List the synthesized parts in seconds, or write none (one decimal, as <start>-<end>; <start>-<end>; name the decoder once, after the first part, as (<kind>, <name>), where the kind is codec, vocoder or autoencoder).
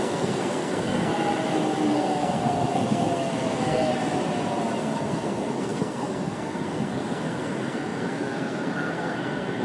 0.0-1.1 (codec, SNAC); 1.9-3.9; 4.8-9.6